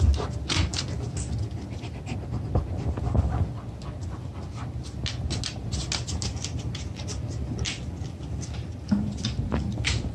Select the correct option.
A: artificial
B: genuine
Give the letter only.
B